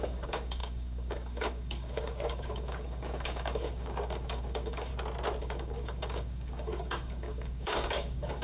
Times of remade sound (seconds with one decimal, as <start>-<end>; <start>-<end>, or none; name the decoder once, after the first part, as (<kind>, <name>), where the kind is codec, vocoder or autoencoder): 0.0-4.9 (codec, DAC); 5.4-8.4